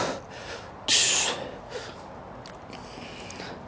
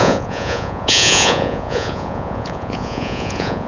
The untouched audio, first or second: first